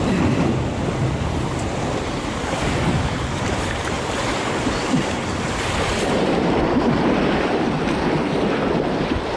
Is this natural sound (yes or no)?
no